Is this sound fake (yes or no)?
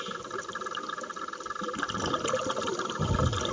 no